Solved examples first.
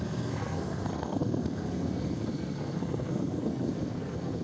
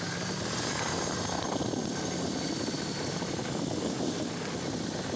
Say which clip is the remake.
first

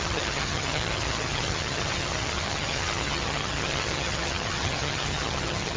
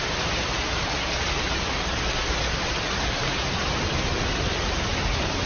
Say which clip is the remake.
first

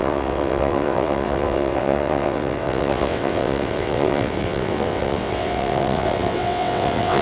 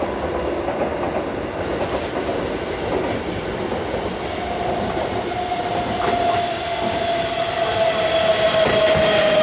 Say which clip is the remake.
first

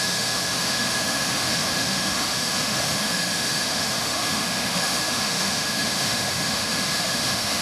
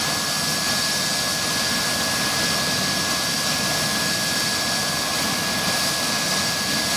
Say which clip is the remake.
first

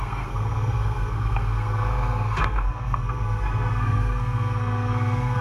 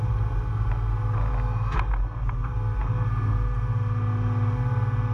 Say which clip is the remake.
first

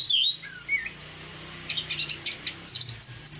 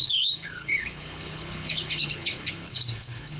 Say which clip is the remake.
second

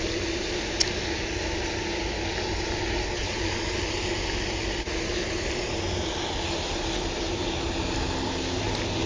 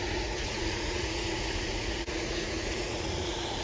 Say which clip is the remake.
second